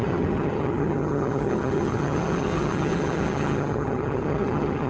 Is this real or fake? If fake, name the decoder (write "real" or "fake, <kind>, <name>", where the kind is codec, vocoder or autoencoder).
fake, vocoder, HiFi-GAN